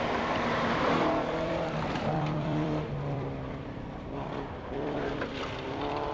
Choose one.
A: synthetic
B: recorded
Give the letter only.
A